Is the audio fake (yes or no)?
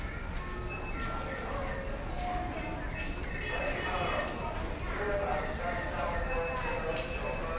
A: no